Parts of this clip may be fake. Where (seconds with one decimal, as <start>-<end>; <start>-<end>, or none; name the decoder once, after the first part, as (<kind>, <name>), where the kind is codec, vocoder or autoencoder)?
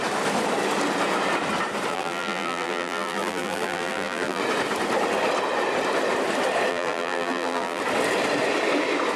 1.9-4.4 (vocoder, BigVGAN v2); 6.7-7.8